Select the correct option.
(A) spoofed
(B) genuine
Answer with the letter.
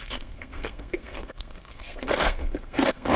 A